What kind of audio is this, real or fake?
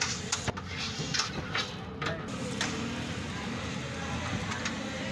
real